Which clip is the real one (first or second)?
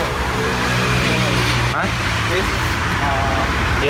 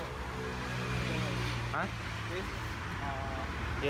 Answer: second